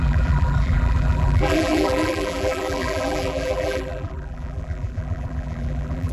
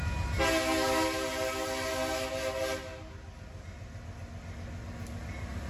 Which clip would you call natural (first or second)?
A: second